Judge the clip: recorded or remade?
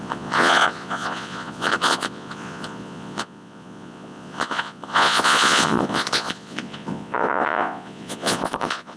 remade